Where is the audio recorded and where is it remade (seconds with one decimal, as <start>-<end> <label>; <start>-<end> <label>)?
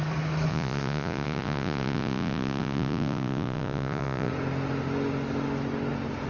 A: 0.0-0.5 recorded; 0.5-4.3 remade; 4.3-6.3 recorded